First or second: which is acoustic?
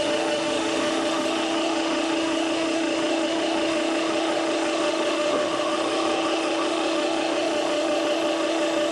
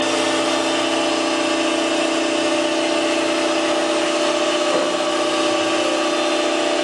second